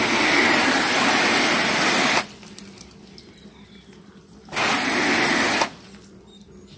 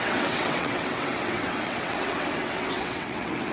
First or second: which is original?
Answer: first